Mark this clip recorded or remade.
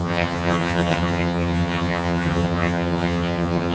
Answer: remade